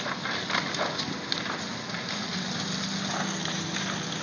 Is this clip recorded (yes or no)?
yes